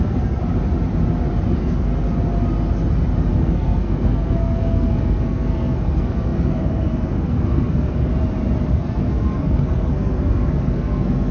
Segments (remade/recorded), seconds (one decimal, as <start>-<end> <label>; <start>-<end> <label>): 0.0-0.4 remade; 0.4-1.5 recorded; 1.5-1.9 remade; 1.9-3.3 recorded; 3.3-8.1 remade; 8.1-8.7 recorded; 8.7-11.3 remade